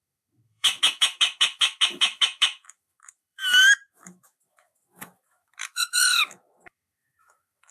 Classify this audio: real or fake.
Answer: fake